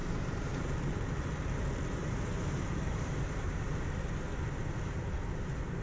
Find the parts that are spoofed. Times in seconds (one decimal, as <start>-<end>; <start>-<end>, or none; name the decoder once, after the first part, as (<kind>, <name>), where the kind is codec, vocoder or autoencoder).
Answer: 0.0-0.8 (vocoder, BigVGAN v2); 2.0-3.7